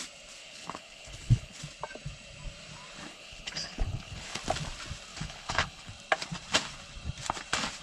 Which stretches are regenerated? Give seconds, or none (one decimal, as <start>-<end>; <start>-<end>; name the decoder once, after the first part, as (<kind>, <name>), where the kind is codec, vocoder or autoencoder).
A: 0.4-1.6 (codec, HILCodec); 3.1-4.4; 5.1-5.9